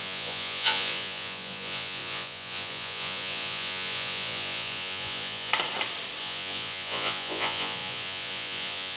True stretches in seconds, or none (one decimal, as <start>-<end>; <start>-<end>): 5.5-6.2

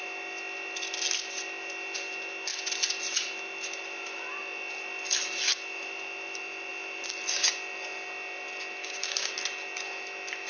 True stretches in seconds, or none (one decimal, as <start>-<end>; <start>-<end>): 0.0-8.8; 9.3-10.5

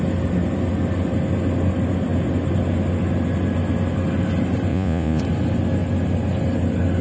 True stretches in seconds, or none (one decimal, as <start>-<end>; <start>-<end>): 0.0-4.7; 5.2-7.0

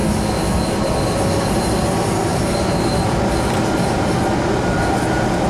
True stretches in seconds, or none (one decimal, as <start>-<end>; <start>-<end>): 0.0-5.5